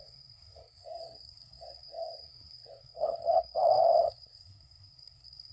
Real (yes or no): no